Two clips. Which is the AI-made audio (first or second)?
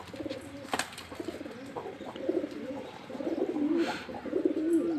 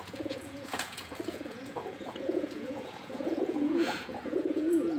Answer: second